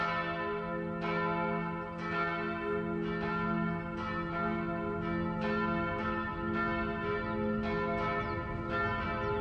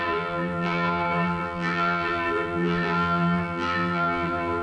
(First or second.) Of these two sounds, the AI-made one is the second